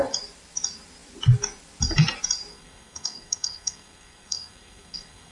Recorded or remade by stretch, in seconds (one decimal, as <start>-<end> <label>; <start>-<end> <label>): 0.0-2.5 recorded; 2.5-5.3 remade